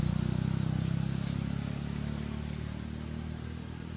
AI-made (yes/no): no